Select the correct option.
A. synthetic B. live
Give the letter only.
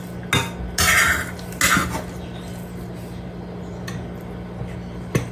B